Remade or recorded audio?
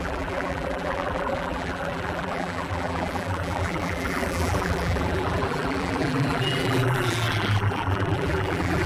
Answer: remade